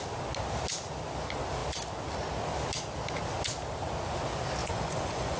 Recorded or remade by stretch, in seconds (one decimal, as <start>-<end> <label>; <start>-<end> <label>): 0.0-4.6 recorded; 4.6-5.4 remade